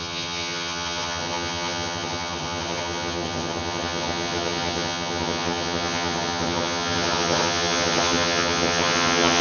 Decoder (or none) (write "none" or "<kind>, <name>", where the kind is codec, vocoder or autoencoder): vocoder, HiFi-GAN